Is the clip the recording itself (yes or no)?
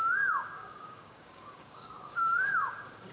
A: no